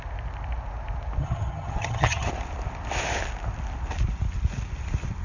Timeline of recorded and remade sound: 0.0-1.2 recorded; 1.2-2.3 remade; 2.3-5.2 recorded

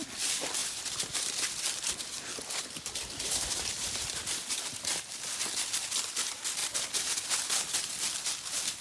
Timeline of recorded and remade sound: 0.0-0.6 recorded; 0.6-5.9 remade; 5.9-6.6 recorded; 6.6-7.4 remade; 7.4-8.8 recorded